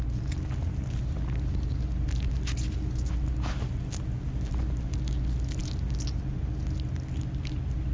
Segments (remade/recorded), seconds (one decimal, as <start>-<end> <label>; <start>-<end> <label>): 0.0-7.9 recorded